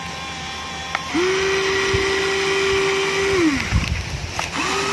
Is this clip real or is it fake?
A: real